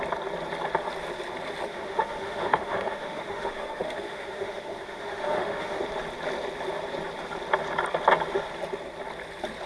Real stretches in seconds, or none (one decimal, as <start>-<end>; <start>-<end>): 0.0-1.7; 5.8-9.7